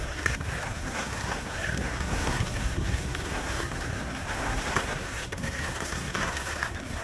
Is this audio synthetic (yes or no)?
yes